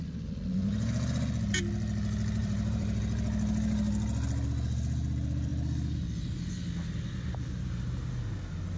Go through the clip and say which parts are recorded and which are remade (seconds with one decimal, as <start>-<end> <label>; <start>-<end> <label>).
0.0-2.4 recorded; 2.4-3.0 remade; 3.0-8.8 recorded